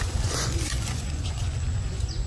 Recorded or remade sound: remade